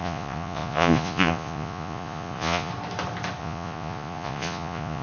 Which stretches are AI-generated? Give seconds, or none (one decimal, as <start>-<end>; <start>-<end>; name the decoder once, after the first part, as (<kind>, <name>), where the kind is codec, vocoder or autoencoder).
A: 0.0-2.7 (vocoder, Vocos); 3.4-5.0